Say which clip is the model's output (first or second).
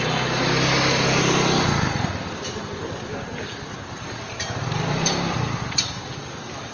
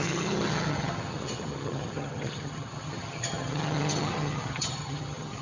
second